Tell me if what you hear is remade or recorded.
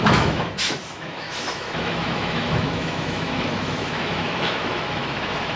remade